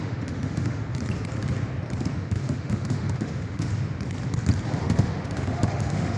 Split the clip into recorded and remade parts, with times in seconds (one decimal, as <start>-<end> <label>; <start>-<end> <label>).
0.0-0.8 remade; 0.8-2.1 recorded; 2.1-3.7 remade; 3.7-4.8 recorded; 4.8-6.2 remade